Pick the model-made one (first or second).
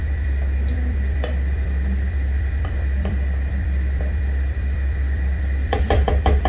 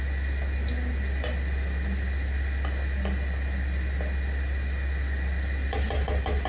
first